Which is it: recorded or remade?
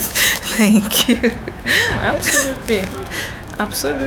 remade